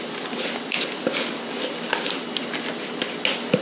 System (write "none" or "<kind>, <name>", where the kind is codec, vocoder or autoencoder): none